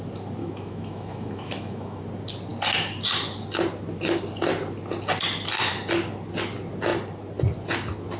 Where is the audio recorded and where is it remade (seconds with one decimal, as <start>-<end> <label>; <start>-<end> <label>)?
0.0-0.4 recorded; 0.4-2.0 remade; 2.0-8.2 recorded